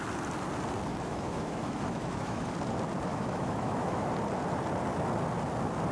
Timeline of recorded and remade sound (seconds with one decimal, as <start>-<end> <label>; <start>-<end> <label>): 0.0-0.9 recorded; 0.9-2.5 remade; 2.5-3.1 recorded; 3.1-4.1 remade; 4.1-5.9 recorded

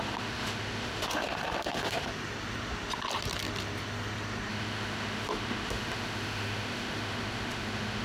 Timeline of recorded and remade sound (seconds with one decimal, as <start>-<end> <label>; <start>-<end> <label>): 0.0-2.1 remade; 2.1-4.5 recorded; 4.5-8.0 remade

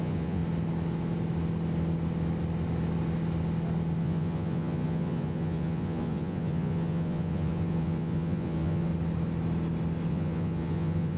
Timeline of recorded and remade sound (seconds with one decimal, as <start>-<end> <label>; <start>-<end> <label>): 0.0-0.4 remade; 0.4-4.0 recorded; 4.0-8.9 remade; 8.9-10.1 recorded; 10.1-11.2 remade